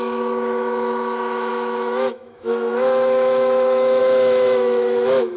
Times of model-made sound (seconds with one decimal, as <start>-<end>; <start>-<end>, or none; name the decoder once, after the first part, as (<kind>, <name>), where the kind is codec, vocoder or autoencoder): 0.0-5.4 (autoencoder, DAC-VAE)